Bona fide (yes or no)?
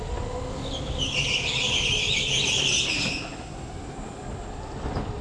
yes